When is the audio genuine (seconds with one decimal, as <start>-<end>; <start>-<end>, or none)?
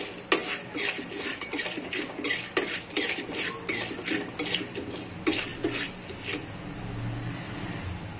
0.0-8.2